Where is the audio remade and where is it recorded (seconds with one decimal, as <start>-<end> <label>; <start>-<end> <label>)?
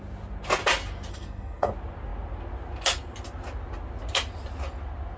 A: 0.0-1.1 recorded; 1.1-1.7 remade; 1.7-5.2 recorded